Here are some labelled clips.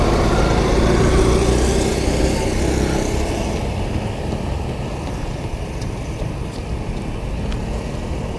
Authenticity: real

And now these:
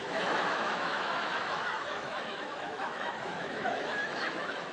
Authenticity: fake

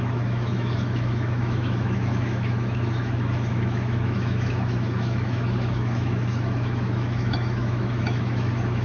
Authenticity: fake